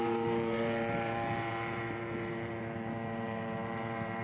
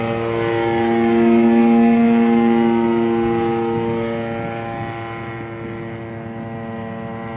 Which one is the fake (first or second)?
first